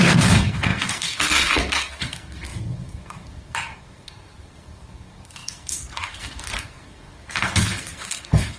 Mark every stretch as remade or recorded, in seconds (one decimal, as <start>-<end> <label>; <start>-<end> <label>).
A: 0.0-8.6 remade